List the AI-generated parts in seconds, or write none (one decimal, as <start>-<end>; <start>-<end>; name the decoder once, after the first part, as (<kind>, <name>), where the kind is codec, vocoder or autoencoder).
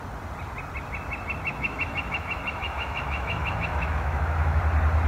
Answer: 1.5-4.6 (autoencoder, DAC-VAE)